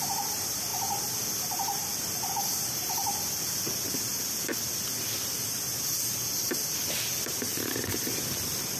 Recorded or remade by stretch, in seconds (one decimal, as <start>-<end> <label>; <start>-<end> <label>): 0.0-8.8 recorded